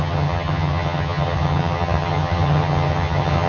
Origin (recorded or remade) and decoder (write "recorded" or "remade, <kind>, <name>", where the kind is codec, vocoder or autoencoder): remade, vocoder, HiFi-GAN